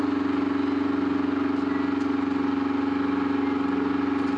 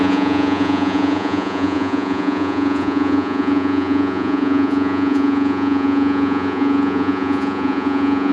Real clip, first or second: first